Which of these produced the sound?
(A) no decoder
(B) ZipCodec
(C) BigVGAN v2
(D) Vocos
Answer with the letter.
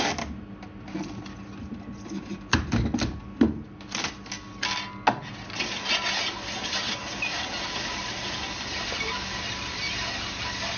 A